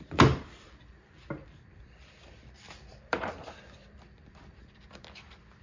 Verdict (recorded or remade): remade